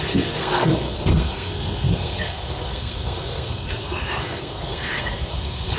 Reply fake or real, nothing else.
fake